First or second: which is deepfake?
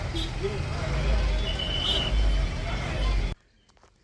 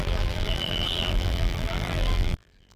second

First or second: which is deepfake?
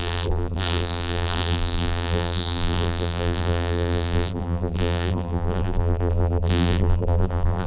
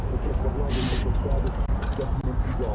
first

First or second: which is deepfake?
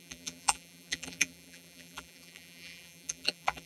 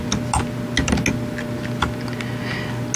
first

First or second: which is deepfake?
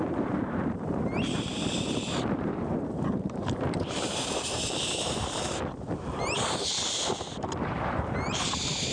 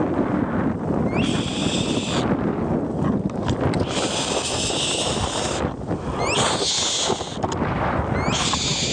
first